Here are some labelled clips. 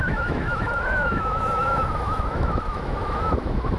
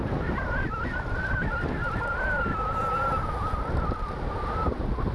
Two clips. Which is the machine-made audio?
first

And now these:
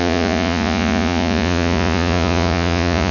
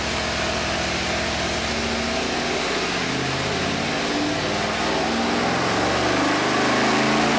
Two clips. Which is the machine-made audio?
first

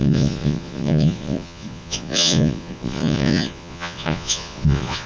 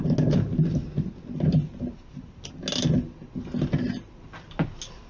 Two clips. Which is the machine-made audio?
first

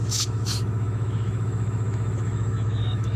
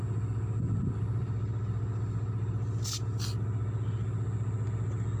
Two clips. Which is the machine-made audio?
first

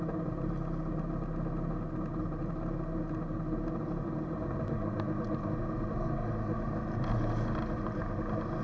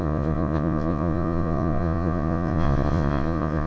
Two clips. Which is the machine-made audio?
second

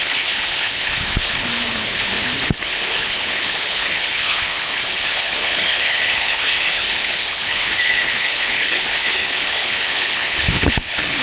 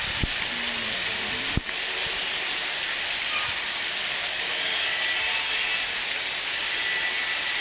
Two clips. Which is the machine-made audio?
first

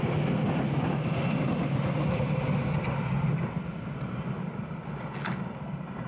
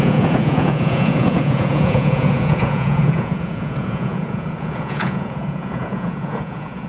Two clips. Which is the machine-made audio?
second